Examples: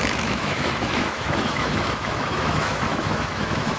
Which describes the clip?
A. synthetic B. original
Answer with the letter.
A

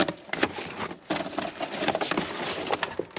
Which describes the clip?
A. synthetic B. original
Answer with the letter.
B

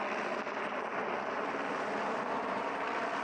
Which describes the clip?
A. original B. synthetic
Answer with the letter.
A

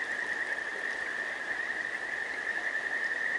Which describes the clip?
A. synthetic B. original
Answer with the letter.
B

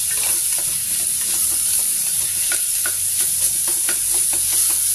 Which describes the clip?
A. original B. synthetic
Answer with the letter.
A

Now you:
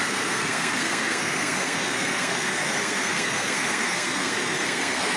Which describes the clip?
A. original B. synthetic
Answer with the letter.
B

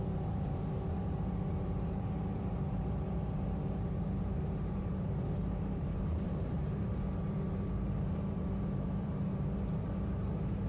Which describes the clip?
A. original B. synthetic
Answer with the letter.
B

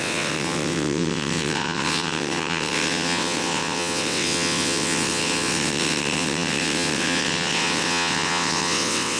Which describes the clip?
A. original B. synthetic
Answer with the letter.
B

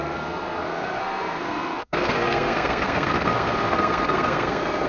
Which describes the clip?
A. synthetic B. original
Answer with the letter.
A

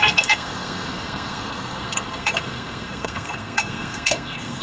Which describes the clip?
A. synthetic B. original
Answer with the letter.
A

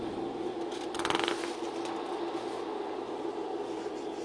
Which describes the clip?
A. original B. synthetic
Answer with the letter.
A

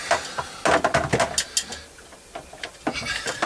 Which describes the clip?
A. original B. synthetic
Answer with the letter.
A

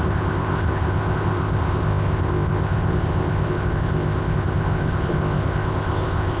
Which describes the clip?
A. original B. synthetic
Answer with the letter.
B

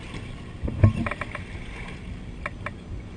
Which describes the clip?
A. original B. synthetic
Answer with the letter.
A